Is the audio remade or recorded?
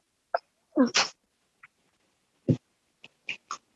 recorded